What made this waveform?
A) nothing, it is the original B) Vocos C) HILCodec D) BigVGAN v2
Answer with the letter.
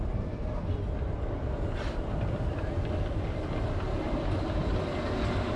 A